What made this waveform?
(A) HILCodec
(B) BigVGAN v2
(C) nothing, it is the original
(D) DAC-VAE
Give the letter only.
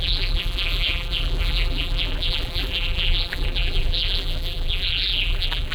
B